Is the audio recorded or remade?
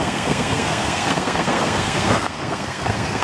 remade